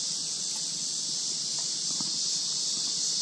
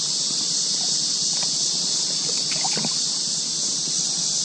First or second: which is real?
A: first